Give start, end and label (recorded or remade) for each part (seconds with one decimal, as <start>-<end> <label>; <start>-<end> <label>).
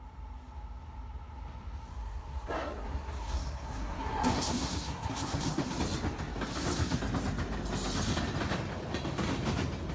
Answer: 0.0-1.9 recorded; 1.9-5.8 remade; 5.8-6.5 recorded; 6.5-7.0 remade; 7.0-9.9 recorded